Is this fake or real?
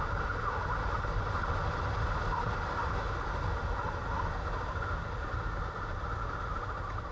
real